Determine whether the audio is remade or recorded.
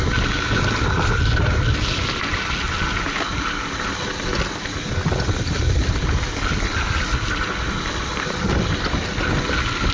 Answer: recorded